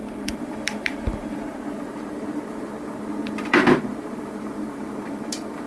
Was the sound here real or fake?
fake